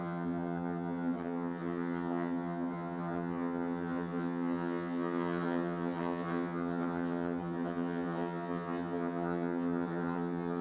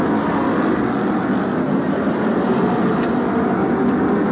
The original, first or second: second